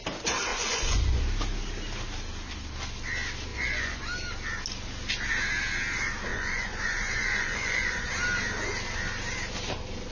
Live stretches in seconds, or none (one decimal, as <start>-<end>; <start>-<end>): 0.0-0.5; 1.2-3.5; 4.0-6.3; 8.1-10.1